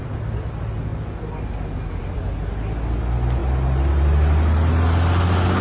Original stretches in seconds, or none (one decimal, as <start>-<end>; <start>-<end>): 0.0-5.6